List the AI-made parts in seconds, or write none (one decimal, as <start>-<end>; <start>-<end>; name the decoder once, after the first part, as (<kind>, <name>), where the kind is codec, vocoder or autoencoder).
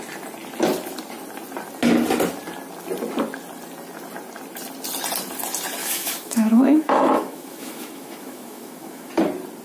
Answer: 5.8-9.1 (autoencoder, DAC-VAE)